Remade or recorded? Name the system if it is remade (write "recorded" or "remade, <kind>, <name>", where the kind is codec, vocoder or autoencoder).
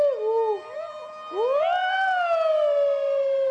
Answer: recorded